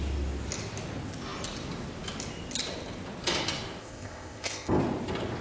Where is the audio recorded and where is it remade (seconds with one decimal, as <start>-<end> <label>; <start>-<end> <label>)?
0.0-3.8 recorded; 3.8-4.8 remade; 4.8-5.4 recorded